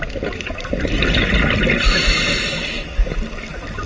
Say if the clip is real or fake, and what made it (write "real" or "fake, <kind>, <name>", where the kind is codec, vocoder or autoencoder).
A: real